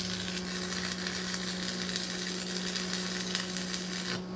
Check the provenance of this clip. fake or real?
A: real